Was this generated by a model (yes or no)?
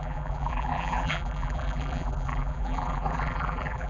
yes